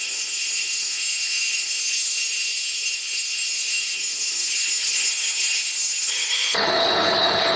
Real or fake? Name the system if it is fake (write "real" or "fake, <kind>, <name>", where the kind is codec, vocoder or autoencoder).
fake, codec, HILCodec